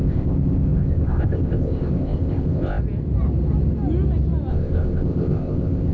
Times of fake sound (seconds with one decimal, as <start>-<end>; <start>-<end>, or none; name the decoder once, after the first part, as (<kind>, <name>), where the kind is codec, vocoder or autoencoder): 0.0-2.8 (codec, ZipCodec); 4.5-5.9